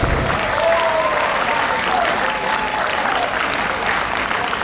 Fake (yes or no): no